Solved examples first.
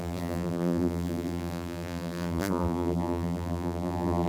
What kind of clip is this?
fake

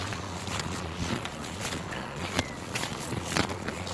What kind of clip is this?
fake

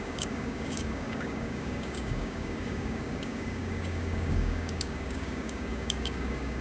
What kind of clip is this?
fake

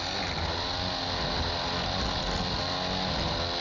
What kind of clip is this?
real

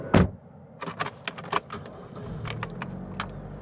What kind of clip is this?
real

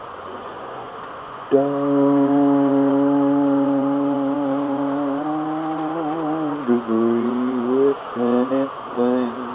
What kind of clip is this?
fake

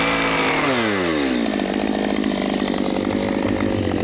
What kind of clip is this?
real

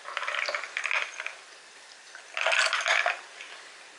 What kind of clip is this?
real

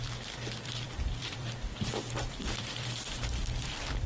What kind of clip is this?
fake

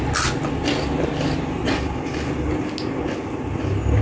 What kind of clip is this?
real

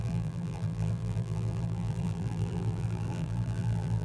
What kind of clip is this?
fake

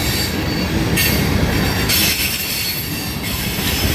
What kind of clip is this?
real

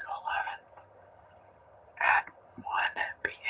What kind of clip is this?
fake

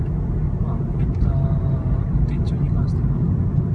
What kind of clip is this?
real